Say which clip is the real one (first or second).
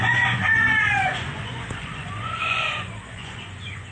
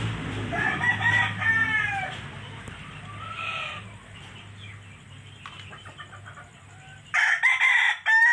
second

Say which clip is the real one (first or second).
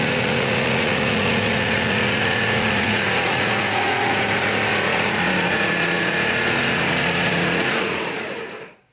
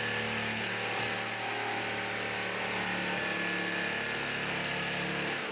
second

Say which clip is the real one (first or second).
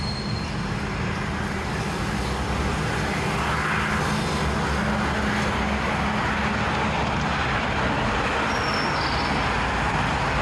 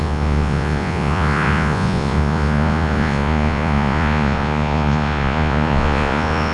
first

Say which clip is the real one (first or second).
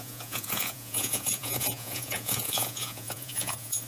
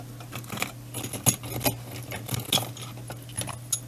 second